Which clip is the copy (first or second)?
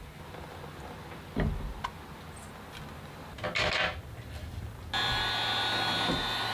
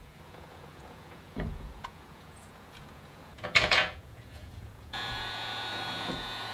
second